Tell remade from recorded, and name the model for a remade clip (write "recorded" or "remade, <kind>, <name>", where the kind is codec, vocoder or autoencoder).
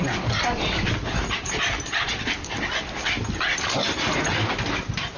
recorded